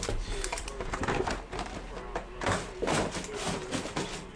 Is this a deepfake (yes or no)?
no